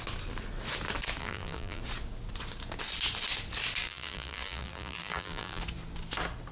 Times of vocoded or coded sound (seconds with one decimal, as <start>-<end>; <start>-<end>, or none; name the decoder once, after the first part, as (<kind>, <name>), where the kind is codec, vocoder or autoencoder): 1.2-1.8 (vocoder, BigVGAN v2); 3.8-5.6